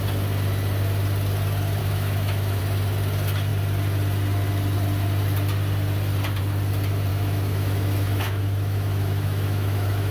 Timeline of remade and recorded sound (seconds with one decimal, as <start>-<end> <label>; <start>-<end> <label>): 0.0-1.8 recorded; 1.8-2.6 remade; 2.6-7.1 recorded; 7.1-10.1 remade